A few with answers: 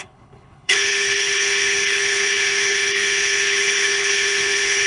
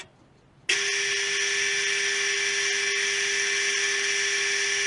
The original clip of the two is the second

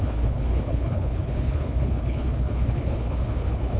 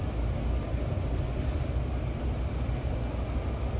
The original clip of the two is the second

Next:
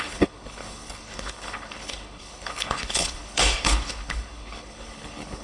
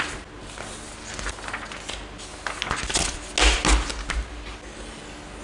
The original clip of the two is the second